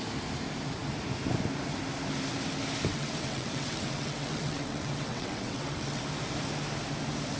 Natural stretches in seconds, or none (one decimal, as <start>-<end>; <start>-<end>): 0.0-2.9; 6.0-7.4